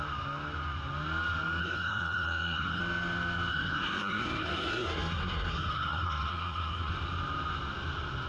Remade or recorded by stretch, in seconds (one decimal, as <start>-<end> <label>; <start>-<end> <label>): 0.0-1.6 recorded; 1.6-2.8 remade; 2.8-3.5 recorded; 3.5-6.9 remade; 6.9-8.3 recorded